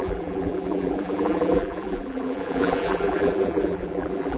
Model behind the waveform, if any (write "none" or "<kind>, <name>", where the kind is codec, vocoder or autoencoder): vocoder, BigVGAN v2